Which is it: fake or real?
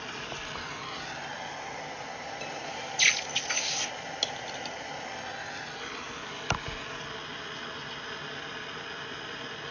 real